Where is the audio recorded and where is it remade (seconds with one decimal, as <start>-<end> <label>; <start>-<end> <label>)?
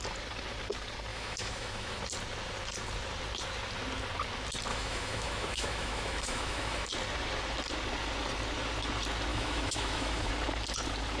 0.0-1.1 recorded; 1.1-2.0 remade; 2.0-4.7 recorded; 4.7-6.9 remade; 6.9-9.3 recorded; 9.3-10.3 remade; 10.3-11.2 recorded